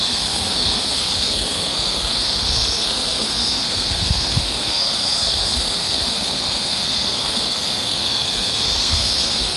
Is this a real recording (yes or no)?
no